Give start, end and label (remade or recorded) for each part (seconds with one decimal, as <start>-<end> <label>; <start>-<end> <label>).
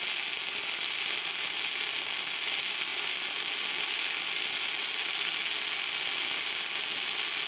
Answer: 0.0-7.5 recorded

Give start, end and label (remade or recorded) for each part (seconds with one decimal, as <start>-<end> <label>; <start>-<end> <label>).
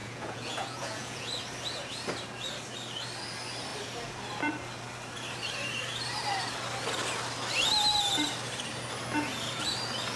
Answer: 0.0-1.3 remade; 1.3-10.2 recorded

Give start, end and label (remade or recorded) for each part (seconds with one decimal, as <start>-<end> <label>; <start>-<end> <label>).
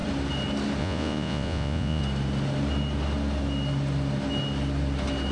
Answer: 0.0-0.8 recorded; 0.8-2.0 remade; 2.0-5.3 recorded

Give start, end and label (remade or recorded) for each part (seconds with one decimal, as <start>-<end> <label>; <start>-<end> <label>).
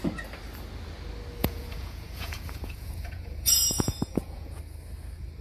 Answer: 0.0-1.4 recorded; 1.4-4.6 remade; 4.6-5.4 recorded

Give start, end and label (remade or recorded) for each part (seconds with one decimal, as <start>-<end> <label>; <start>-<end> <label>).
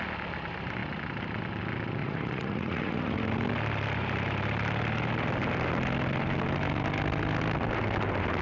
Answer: 0.0-2.0 recorded; 2.0-3.1 remade; 3.1-8.4 recorded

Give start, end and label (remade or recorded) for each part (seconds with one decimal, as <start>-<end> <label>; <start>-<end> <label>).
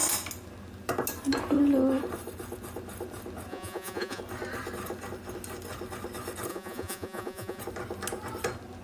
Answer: 0.0-3.5 recorded; 3.5-4.2 remade; 4.2-6.5 recorded; 6.5-7.6 remade; 7.6-8.8 recorded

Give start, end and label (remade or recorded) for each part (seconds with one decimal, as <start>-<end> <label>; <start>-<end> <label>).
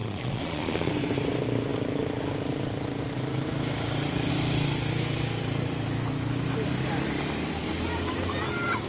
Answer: 0.0-0.9 remade; 0.9-8.9 recorded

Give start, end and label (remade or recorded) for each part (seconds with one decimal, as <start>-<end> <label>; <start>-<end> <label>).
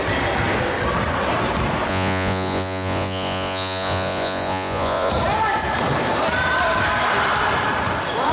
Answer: 0.0-1.9 recorded; 1.9-5.1 remade; 5.1-8.3 recorded